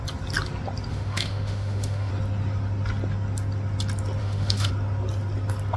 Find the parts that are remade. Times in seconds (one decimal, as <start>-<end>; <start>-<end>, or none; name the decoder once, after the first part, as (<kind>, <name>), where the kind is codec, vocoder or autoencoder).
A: 0.9-2.1 (autoencoder, DAC-VAE); 4.2-4.7